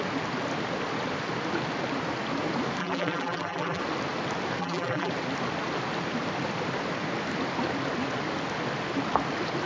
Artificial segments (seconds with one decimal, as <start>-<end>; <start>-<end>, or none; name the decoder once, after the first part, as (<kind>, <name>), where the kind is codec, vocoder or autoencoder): 2.8-3.8 (vocoder, BigVGAN v2); 4.6-5.1